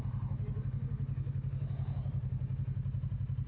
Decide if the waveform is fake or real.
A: real